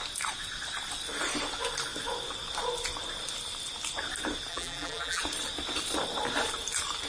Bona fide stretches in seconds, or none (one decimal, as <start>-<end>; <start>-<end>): 0.0-4.5; 5.2-7.1